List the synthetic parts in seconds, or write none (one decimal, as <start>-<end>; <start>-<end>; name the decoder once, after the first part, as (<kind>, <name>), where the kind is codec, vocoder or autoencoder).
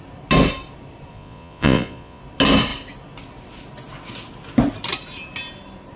1.1-2.2 (vocoder, Vocos)